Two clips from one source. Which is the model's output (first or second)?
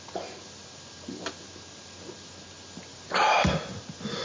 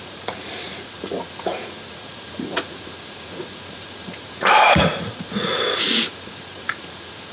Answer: second